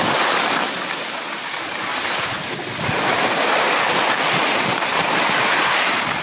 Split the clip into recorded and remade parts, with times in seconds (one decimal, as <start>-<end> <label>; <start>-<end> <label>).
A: 0.0-1.9 recorded; 1.9-3.7 remade; 3.7-4.9 recorded; 4.9-5.7 remade; 5.7-6.2 recorded